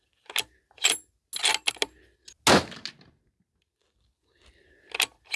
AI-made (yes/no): no